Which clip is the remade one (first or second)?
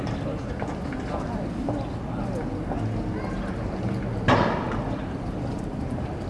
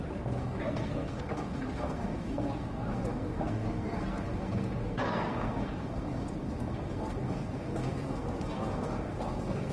second